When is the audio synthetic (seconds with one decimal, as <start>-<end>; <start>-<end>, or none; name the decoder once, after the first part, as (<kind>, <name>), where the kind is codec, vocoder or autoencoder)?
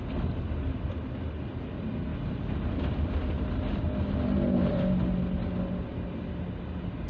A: none